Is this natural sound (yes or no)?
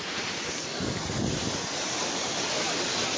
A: yes